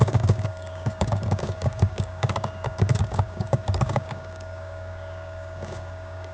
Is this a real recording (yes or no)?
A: no